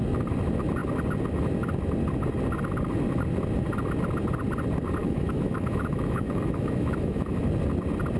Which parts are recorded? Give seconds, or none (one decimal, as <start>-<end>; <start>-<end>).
0.0-5.0; 7.4-8.2